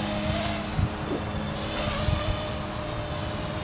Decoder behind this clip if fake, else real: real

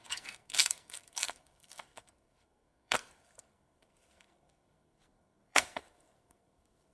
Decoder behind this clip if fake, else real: fake, codec, SNAC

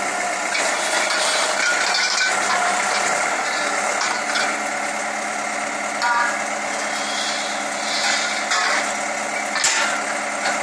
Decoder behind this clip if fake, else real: real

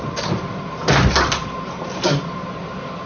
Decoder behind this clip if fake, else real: real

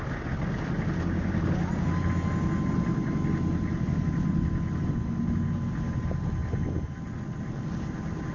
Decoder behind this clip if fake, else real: real